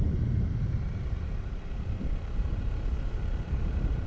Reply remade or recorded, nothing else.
remade